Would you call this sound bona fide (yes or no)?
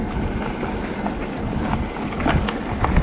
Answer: yes